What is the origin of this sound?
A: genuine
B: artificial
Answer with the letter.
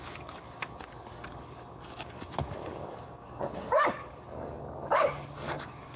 B